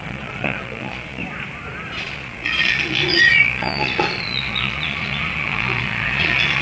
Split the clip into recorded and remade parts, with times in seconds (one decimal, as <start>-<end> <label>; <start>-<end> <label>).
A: 0.0-1.2 remade; 1.2-2.0 recorded; 2.0-6.6 remade